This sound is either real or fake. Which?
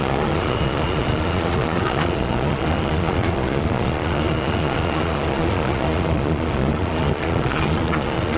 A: fake